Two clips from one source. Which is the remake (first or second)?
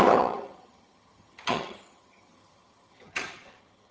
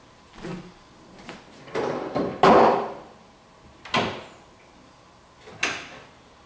first